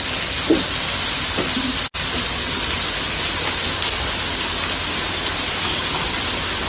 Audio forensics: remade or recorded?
recorded